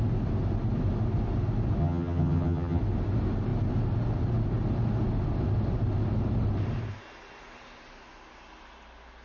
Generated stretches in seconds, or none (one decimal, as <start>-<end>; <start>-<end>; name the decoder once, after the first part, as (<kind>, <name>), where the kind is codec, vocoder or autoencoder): 1.8-2.8 (vocoder, HiFi-GAN)